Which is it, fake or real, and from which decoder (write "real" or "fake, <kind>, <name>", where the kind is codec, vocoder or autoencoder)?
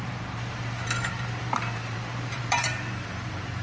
fake, vocoder, BigVGAN v2